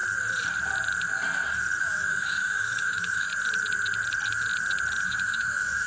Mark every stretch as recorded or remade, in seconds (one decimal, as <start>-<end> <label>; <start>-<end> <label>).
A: 0.0-1.8 recorded; 1.8-3.3 remade; 3.3-5.0 recorded; 5.0-5.9 remade